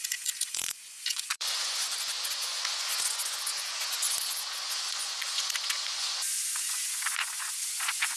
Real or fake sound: fake